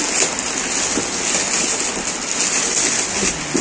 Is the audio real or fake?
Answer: real